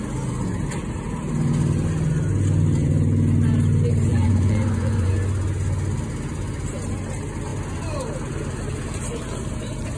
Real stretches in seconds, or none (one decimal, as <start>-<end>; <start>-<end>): 0.0-4.1; 5.1-10.0